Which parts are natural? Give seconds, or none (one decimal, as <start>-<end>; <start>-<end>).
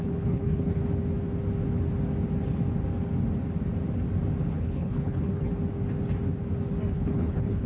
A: 0.8-4.5; 5.5-6.9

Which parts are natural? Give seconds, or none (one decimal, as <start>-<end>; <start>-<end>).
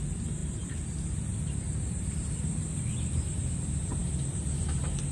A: 0.0-0.4; 3.5-5.1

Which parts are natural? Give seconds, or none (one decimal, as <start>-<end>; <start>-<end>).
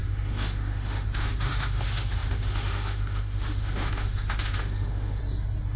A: 5.2-5.8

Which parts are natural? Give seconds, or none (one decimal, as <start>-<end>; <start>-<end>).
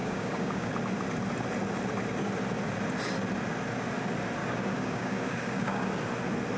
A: 0.7-4.4; 5.9-6.6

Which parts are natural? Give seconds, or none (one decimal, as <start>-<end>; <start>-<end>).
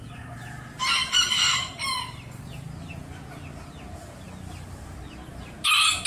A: 0.0-1.0; 3.3-5.3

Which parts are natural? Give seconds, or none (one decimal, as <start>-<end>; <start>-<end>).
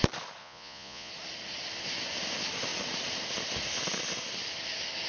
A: 0.0-0.4; 1.1-5.1